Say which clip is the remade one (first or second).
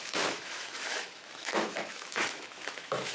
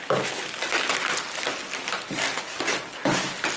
first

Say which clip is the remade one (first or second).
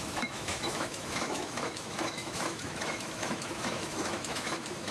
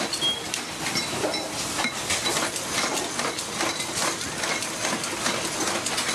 first